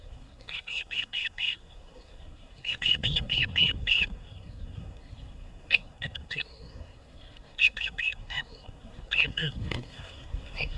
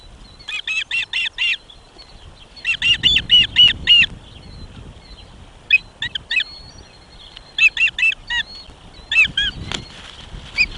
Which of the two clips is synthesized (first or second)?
first